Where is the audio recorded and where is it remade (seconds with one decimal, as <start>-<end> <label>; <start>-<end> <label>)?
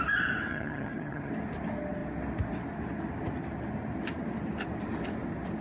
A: 0.0-0.5 recorded; 0.5-1.3 remade; 1.3-5.6 recorded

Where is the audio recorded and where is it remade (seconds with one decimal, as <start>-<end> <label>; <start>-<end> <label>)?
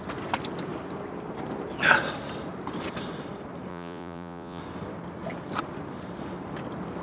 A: 0.0-3.7 recorded; 3.7-4.6 remade; 4.6-7.0 recorded